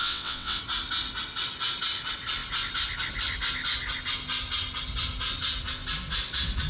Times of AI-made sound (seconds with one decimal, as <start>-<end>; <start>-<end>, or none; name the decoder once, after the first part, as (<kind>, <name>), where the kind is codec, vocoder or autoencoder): 0.0-0.6 (vocoder, WaveNeXt)